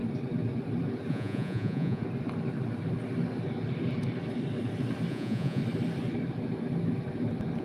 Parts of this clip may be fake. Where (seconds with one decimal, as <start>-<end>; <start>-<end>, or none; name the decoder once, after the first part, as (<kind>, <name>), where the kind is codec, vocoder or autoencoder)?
1.1-2.0 (vocoder, Vocos); 5.1-5.6